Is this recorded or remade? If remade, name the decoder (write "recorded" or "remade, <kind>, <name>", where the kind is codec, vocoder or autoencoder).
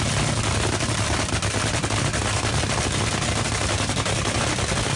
recorded